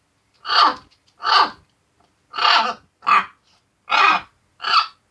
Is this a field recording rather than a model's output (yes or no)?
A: yes